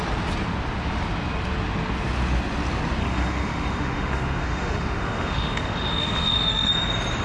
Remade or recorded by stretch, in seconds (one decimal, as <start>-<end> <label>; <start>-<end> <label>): 0.0-3.0 recorded; 3.0-6.7 remade; 6.7-7.2 recorded